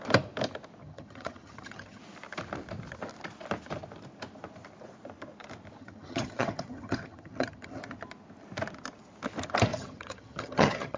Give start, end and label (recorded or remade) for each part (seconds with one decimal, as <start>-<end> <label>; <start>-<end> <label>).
0.0-0.8 recorded; 0.8-2.0 remade; 2.0-5.8 recorded; 5.8-7.8 remade; 7.8-9.7 recorded; 9.7-11.0 remade